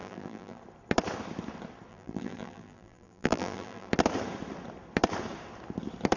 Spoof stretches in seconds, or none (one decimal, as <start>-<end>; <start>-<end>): 0.0-0.6; 1.9-3.9